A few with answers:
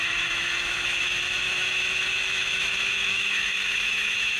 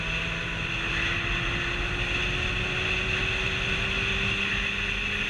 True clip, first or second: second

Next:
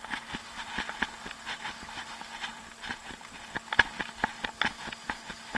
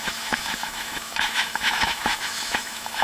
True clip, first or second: first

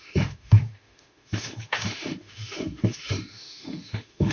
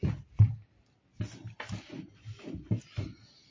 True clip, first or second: second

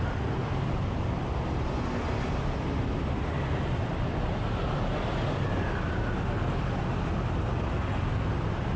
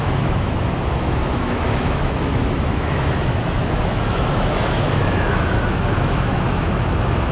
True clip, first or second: first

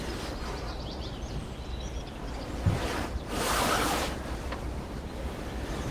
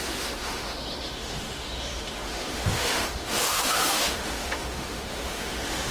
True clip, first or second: first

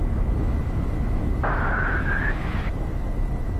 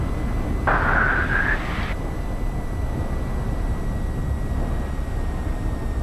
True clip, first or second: second